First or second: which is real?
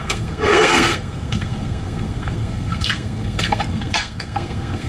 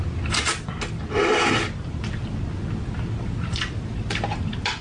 second